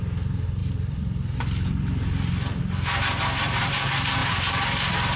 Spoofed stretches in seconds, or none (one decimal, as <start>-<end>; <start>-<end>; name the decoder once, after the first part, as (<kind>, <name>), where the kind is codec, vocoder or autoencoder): 0.6-2.6 (vocoder, BigVGAN v2)